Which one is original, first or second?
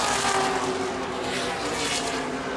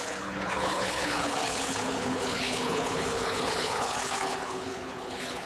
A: first